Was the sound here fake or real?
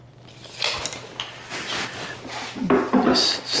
real